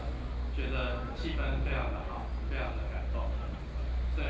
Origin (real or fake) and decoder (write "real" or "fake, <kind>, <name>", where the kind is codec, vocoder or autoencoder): real